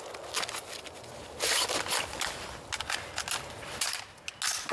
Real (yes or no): yes